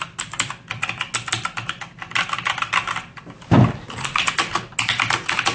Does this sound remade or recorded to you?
recorded